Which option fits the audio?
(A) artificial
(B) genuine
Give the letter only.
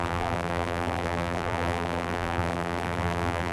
A